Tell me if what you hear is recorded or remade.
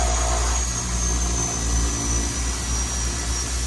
recorded